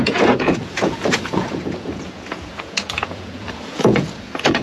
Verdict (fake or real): fake